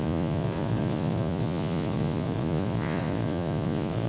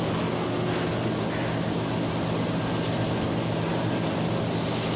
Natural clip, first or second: second